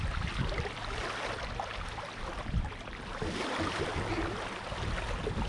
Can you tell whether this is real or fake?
real